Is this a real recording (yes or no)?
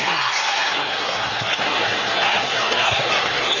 no